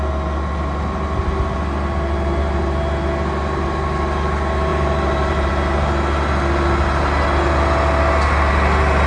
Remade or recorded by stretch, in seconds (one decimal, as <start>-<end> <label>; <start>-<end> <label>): 0.0-4.7 recorded; 4.7-5.5 remade; 5.5-9.1 recorded